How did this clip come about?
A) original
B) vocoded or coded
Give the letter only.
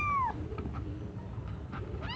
A